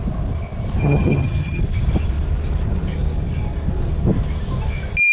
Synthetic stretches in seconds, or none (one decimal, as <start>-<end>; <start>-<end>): 0.8-1.6